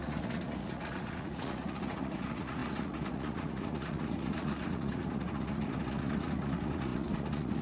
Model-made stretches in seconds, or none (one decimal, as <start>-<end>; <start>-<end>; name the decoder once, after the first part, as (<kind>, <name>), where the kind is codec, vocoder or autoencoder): 0.0-7.6 (vocoder, Vocos)